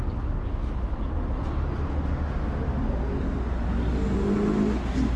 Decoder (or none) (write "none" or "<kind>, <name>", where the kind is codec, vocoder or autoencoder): none